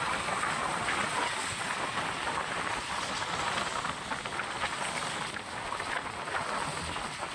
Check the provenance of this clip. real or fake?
real